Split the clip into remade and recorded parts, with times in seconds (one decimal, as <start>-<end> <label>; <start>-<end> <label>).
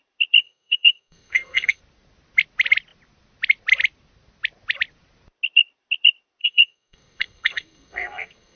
0.0-0.4 recorded; 0.4-1.8 remade; 1.8-6.4 recorded; 6.4-8.6 remade